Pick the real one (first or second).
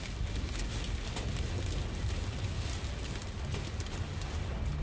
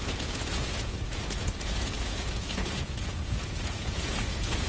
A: first